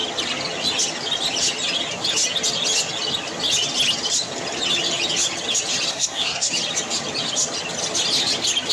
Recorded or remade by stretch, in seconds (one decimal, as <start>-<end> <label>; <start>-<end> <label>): 0.0-5.9 recorded; 5.9-6.5 remade; 6.5-8.7 recorded